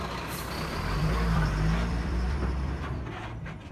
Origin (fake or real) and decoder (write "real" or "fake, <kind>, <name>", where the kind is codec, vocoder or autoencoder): fake, vocoder, BigVGAN v2